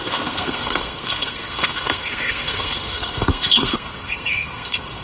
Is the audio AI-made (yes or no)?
yes